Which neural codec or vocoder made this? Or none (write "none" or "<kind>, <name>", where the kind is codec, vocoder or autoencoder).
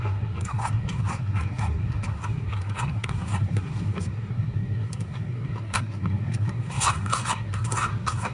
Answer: codec, SNAC